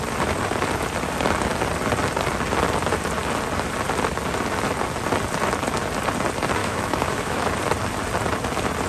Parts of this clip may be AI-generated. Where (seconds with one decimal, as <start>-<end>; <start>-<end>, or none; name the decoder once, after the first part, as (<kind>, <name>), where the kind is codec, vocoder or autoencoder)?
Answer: 6.6-7.5 (autoencoder, DAC-VAE)